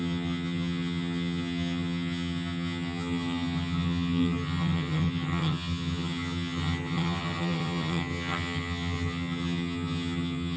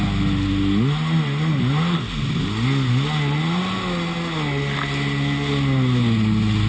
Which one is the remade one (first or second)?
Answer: first